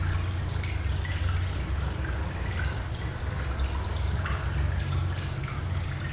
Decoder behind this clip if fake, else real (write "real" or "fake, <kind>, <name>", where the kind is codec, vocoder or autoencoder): real